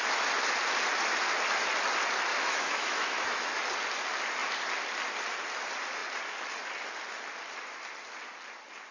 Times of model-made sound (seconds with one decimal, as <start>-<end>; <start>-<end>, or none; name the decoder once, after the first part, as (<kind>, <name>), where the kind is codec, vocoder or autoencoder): 2.3-3.6 (autoencoder, DAC-VAE)